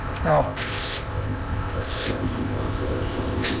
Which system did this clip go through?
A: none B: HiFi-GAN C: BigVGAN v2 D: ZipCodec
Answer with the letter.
D